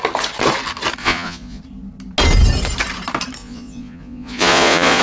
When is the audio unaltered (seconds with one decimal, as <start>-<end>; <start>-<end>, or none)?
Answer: 0.0-1.0; 1.6-3.4